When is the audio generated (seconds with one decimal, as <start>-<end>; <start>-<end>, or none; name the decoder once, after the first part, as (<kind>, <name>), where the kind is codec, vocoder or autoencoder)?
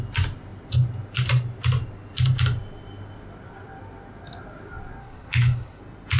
5.0-5.8 (codec, HILCodec)